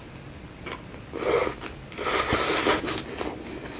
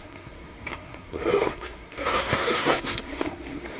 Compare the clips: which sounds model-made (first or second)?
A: second